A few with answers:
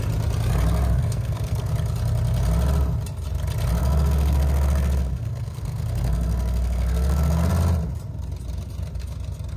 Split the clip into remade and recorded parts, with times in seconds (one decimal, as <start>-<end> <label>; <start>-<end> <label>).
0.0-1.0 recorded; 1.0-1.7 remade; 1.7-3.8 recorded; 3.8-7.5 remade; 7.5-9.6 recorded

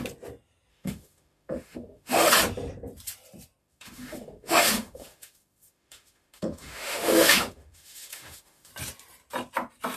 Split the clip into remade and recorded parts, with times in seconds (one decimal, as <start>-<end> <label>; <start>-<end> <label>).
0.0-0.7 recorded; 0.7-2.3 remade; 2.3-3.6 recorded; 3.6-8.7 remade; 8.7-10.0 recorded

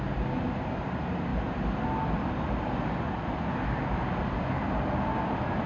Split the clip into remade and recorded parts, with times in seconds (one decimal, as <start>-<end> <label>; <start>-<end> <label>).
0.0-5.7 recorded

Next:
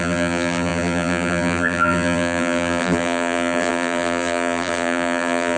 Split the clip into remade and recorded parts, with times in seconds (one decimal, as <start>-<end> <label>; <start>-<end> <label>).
0.0-5.6 remade

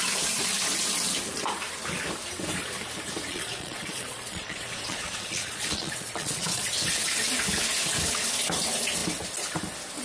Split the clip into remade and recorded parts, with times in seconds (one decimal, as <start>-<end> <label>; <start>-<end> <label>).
0.0-3.3 recorded; 3.3-6.7 remade; 6.7-10.0 recorded